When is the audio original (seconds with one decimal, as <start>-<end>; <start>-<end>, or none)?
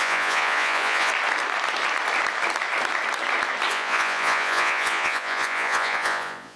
1.1-3.7